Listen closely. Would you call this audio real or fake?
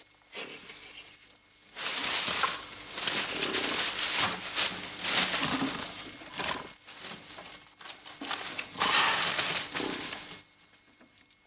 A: real